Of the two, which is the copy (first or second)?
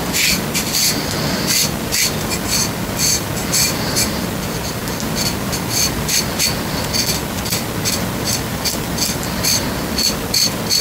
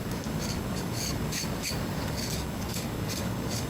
second